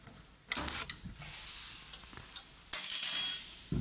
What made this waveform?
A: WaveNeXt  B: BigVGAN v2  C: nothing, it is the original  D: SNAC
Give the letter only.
C